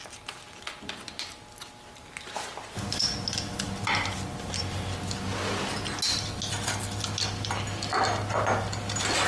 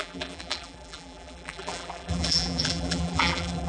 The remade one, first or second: second